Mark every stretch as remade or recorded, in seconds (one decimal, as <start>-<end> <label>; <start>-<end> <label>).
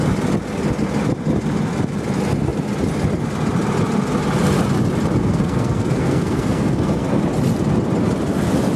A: 0.0-5.2 recorded; 5.2-7.2 remade; 7.2-8.8 recorded